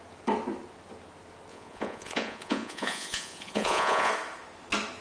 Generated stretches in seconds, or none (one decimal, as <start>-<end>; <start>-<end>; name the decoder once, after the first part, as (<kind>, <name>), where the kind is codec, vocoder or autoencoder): 1.5-4.1 (vocoder, Vocos)